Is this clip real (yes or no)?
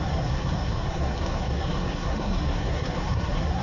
no